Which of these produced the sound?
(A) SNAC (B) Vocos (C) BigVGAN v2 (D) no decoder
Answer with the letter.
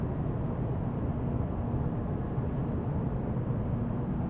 D